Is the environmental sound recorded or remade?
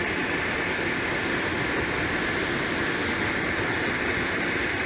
recorded